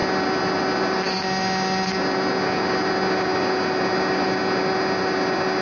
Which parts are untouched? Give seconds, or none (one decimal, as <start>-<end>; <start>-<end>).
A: 0.0-5.6